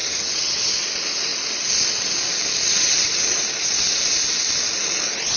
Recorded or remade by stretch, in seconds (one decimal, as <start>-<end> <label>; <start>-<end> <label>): 0.0-0.7 remade; 0.7-5.4 recorded